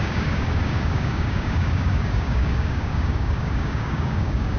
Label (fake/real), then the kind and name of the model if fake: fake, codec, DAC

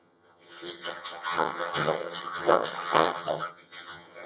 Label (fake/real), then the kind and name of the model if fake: fake, vocoder, HiFi-GAN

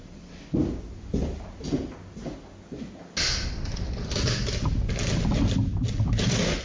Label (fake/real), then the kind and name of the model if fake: real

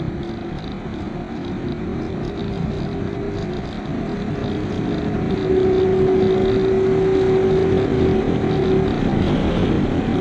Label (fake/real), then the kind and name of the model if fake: real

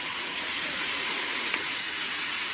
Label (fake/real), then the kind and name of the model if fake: fake, vocoder, Vocos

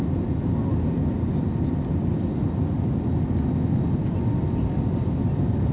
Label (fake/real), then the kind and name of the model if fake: real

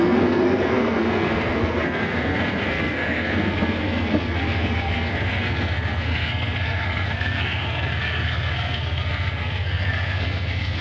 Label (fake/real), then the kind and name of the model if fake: fake, codec, SNAC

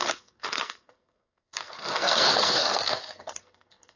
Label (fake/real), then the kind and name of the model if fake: fake, codec, SNAC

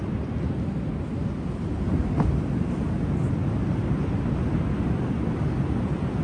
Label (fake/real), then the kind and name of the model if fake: real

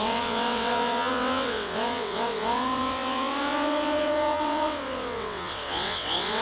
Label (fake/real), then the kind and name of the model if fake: fake, vocoder, WaveNeXt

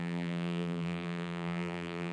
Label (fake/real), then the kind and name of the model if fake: fake, vocoder, BigVGAN v2